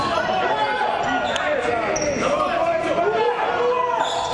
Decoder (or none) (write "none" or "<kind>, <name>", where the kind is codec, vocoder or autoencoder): none